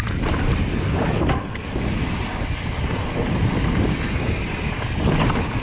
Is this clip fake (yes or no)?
no